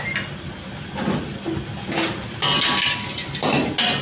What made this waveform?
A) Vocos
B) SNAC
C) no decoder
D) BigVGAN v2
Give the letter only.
C